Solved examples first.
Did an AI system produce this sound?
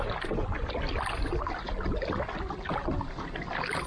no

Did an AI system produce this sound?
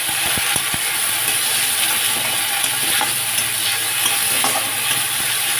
no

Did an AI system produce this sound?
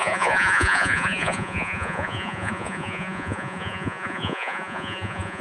yes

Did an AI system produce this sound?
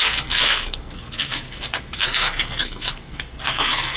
yes